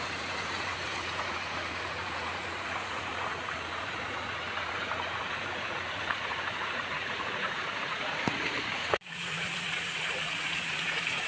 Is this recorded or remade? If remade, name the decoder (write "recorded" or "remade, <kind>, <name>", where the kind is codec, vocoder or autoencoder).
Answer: remade, vocoder, Vocos